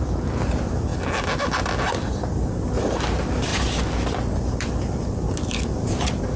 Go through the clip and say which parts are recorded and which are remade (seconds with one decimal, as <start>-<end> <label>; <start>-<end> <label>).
0.0-0.9 remade; 0.9-2.3 recorded; 2.3-3.5 remade; 3.5-4.5 recorded; 4.5-6.4 remade